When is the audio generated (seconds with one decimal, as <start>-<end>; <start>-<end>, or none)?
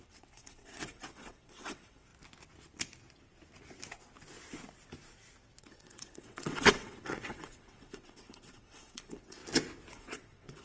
0.0-2.1; 5.6-9.4; 9.9-10.6